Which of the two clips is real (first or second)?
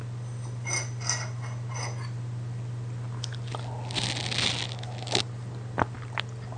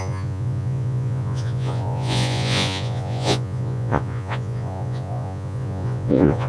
first